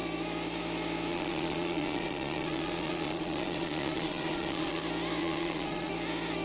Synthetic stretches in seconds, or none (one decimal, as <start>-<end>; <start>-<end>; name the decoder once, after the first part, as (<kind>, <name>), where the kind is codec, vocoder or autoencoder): 1.1-4.8 (vocoder, Vocos); 5.2-5.9